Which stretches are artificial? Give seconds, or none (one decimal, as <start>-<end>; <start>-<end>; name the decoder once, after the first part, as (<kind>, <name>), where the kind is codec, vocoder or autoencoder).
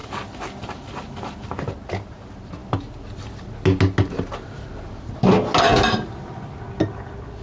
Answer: none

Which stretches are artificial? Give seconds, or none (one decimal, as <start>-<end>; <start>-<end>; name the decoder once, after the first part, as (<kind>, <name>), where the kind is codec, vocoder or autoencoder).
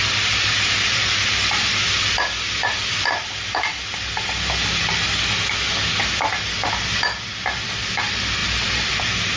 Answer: none